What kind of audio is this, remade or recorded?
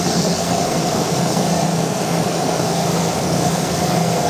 remade